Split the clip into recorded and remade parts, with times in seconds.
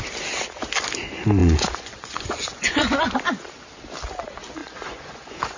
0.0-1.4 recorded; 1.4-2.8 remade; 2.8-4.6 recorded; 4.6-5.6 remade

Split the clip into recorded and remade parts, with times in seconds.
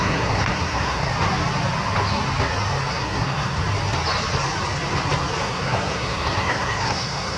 0.0-1.1 remade; 1.1-2.9 recorded; 2.9-3.6 remade; 3.6-5.4 recorded; 5.4-7.4 remade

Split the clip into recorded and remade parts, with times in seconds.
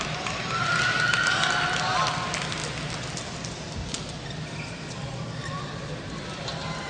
0.0-6.9 recorded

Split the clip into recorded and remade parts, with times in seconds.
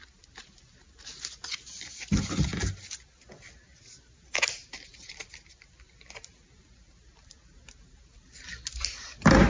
0.0-9.5 recorded